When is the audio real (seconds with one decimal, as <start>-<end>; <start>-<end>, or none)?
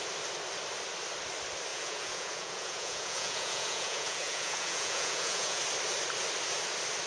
0.0-1.7; 5.6-7.1